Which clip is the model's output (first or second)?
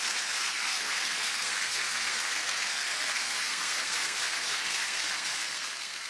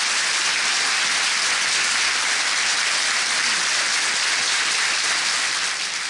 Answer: first